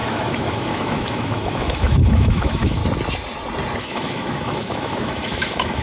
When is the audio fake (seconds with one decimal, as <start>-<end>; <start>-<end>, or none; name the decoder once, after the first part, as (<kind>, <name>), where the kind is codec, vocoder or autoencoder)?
0.0-2.8 (autoencoder, DAC-VAE); 3.8-5.8